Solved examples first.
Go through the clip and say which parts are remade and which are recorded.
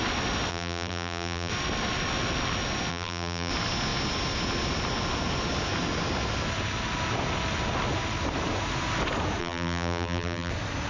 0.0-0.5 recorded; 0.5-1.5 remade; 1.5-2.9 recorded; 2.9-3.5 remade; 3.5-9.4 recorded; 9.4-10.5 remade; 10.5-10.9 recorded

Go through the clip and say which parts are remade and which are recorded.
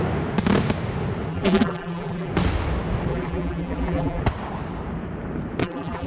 0.0-1.3 recorded; 1.3-2.3 remade; 2.3-3.1 recorded; 3.1-4.2 remade; 4.2-5.6 recorded; 5.6-6.1 remade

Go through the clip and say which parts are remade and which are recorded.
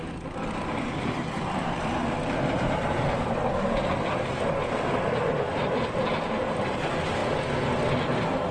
0.0-0.6 recorded; 0.6-2.0 remade; 2.0-8.5 recorded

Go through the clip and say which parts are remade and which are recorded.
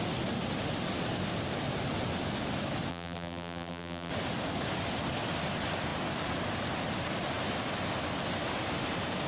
0.0-2.9 recorded; 2.9-4.1 remade; 4.1-9.3 recorded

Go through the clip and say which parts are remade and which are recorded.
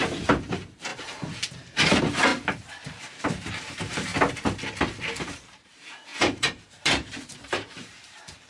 0.0-0.9 remade; 0.9-1.9 recorded; 1.9-2.3 remade; 2.3-3.2 recorded; 3.2-4.1 remade; 4.1-5.2 recorded; 5.2-8.5 remade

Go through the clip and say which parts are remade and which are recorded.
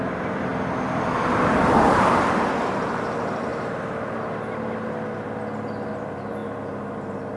0.0-0.5 remade; 0.5-1.5 recorded; 1.5-3.5 remade; 3.5-5.9 recorded; 5.9-7.4 remade